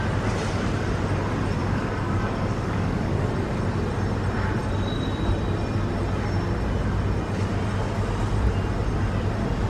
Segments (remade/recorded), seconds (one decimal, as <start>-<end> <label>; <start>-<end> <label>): 0.0-1.6 recorded; 1.6-3.3 remade; 3.3-9.7 recorded